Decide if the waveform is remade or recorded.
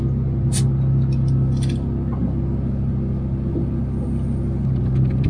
recorded